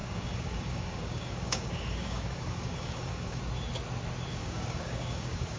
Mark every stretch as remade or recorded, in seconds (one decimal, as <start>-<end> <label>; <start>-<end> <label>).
0.0-3.4 remade; 3.4-4.3 recorded; 4.3-5.6 remade